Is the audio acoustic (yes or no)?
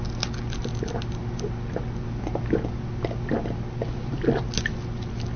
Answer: yes